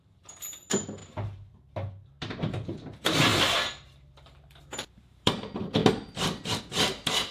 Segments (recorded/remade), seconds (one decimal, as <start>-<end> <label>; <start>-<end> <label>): 0.0-5.8 remade; 5.8-6.6 recorded; 6.6-7.3 remade